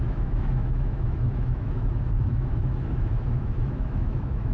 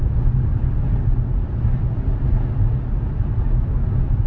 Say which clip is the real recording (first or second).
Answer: second